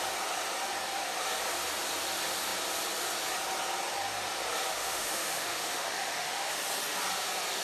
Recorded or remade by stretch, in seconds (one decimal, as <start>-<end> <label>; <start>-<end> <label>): 0.0-4.7 recorded; 4.7-6.5 remade; 6.5-7.6 recorded